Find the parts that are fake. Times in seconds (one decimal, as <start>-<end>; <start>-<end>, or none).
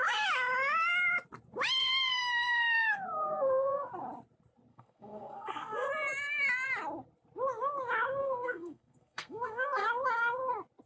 1.8-3.9; 4.7-5.9; 8.2-9.9